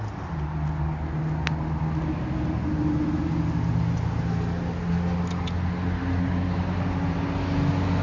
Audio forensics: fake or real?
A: real